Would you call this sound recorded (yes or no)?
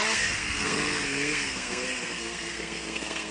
no